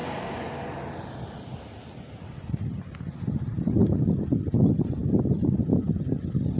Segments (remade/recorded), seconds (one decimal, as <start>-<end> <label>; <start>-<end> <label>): 0.0-6.6 recorded